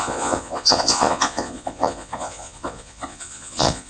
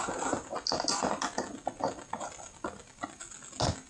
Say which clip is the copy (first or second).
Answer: first